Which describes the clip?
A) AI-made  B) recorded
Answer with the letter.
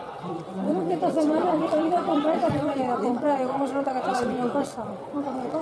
A